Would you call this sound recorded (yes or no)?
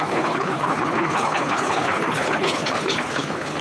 no